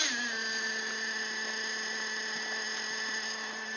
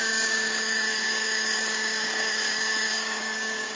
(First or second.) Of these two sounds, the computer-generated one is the second